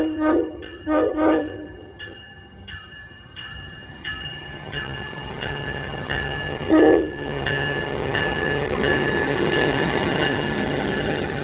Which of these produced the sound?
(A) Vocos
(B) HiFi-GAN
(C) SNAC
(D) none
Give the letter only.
B